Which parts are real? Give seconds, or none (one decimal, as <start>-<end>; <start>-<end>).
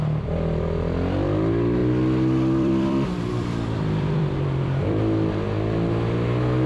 0.0-1.8; 5.0-6.7